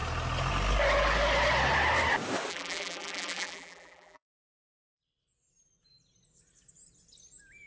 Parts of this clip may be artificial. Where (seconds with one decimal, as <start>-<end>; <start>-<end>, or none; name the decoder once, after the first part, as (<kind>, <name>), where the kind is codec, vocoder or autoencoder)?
2.5-4.3 (vocoder, BigVGAN v2)